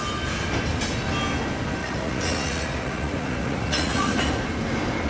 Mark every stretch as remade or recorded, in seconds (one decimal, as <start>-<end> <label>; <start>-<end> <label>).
0.0-1.8 recorded; 1.8-4.2 remade; 4.2-5.1 recorded